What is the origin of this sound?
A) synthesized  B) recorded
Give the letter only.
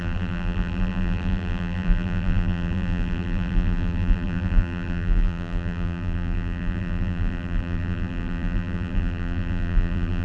A